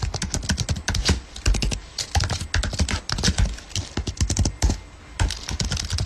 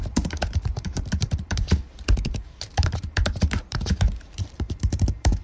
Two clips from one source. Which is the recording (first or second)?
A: first